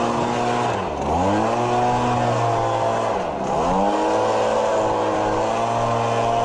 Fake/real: real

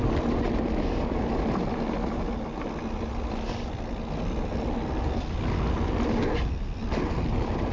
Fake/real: real